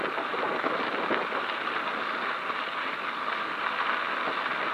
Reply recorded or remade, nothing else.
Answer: recorded